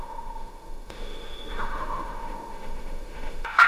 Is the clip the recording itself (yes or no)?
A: no